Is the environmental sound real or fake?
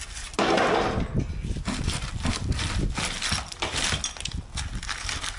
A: real